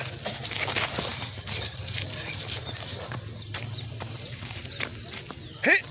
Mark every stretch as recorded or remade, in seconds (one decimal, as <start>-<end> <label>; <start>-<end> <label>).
0.0-1.1 recorded; 1.1-4.6 remade; 4.6-5.9 recorded

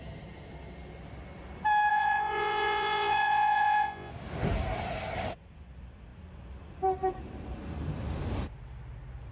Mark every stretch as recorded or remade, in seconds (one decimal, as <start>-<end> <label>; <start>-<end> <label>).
0.0-1.9 recorded; 1.9-4.1 remade; 4.1-9.3 recorded